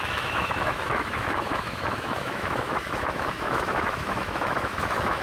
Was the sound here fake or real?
fake